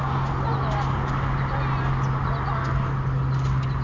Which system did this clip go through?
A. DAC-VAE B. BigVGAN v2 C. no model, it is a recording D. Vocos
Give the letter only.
C